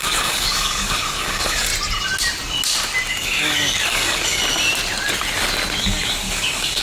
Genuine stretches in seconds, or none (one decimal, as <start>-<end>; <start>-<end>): 1.7-3.1; 4.4-5.8